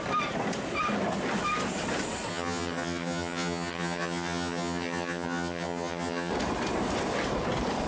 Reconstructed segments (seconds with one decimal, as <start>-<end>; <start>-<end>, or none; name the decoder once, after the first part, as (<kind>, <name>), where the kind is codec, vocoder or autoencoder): 2.3-6.3 (vocoder, HiFi-GAN)